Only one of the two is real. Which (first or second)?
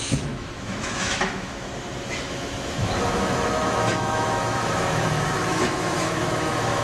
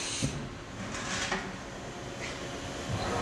second